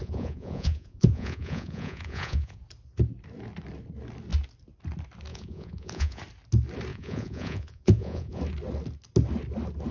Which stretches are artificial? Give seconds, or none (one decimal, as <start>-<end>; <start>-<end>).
0.0-2.6; 5.3-6.2; 6.9-8.4